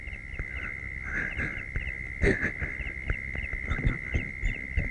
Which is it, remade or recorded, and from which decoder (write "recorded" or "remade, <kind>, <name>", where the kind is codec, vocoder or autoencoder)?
recorded